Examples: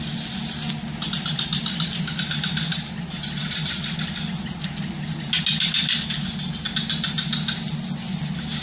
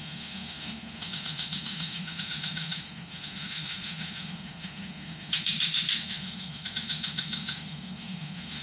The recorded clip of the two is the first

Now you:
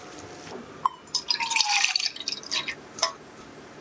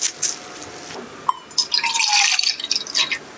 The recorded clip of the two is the second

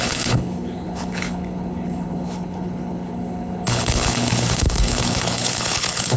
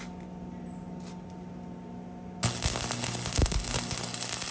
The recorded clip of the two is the second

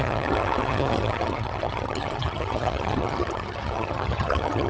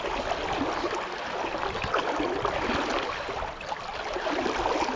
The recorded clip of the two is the second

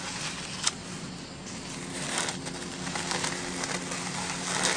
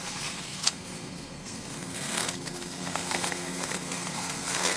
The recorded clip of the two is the first